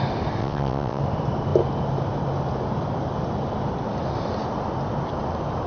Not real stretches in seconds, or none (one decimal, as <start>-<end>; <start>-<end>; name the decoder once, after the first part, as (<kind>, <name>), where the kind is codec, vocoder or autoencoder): 0.4-1.0 (vocoder, WaveNeXt)